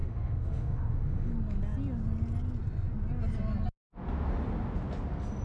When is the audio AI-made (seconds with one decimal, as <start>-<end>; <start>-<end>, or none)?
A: 0.0-1.3